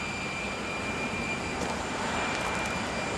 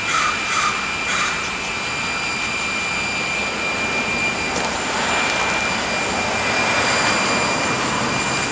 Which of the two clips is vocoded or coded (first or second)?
first